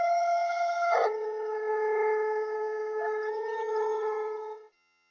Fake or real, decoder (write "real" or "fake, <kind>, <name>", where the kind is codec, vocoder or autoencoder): fake, vocoder, HiFi-GAN